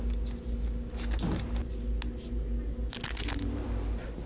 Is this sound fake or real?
real